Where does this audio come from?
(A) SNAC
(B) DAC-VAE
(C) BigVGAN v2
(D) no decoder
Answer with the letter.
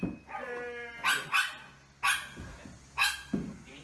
D